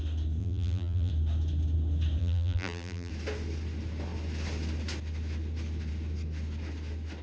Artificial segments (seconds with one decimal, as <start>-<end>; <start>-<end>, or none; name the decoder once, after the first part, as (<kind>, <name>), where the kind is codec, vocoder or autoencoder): 0.4-1.1 (vocoder, BigVGAN v2); 2.2-3.1